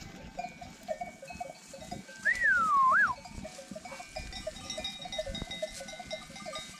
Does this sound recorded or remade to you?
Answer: recorded